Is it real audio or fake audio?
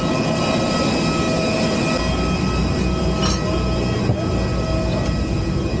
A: real